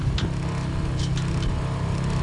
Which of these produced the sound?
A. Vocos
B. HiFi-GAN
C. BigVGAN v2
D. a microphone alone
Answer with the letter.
D